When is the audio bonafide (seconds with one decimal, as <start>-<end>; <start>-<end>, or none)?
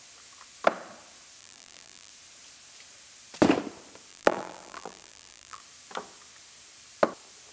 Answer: 0.0-1.4; 2.1-4.1; 5.6-7.5